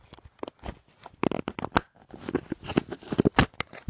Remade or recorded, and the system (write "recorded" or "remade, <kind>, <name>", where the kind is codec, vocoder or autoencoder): recorded